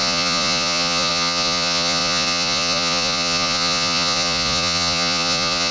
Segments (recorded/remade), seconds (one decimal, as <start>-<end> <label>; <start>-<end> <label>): 0.0-5.7 remade